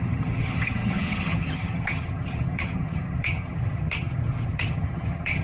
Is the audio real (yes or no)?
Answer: no